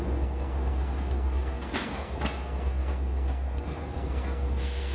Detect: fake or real fake